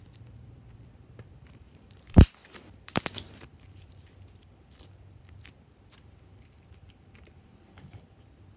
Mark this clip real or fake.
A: fake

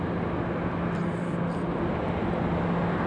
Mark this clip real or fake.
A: real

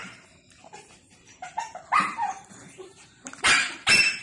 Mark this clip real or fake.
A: fake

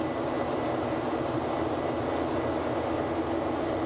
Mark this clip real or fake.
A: real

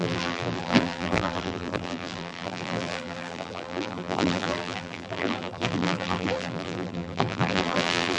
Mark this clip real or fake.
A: fake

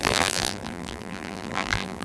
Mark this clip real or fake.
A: fake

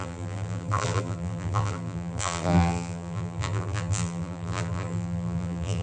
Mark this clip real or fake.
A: fake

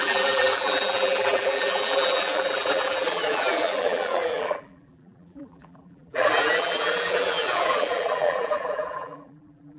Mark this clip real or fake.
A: fake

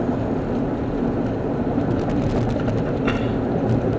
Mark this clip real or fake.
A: real